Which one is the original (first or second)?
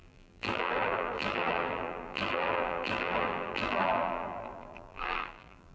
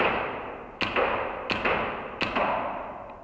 second